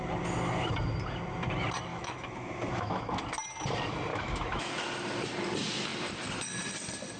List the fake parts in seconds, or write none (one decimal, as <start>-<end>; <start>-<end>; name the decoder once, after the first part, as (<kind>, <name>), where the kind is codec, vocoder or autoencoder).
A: 1.9-3.2 (autoencoder, DAC-VAE); 4.1-4.7